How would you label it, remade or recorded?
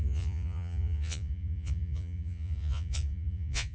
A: remade